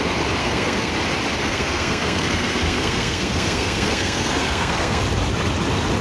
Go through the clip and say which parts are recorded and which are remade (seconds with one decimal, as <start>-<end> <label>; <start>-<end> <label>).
0.0-0.4 recorded; 0.4-0.9 remade; 0.9-1.4 recorded; 1.4-5.0 remade; 5.0-6.0 recorded